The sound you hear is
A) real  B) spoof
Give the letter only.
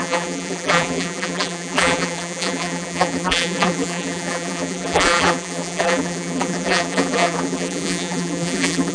B